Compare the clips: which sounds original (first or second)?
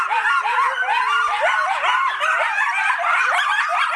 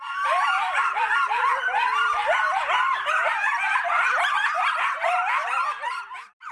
first